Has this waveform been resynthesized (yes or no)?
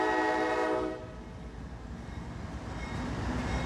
no